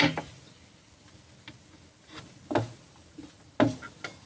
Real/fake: real